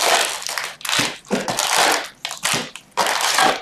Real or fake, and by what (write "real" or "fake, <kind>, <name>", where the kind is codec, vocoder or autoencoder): real